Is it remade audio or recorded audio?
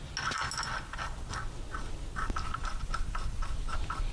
recorded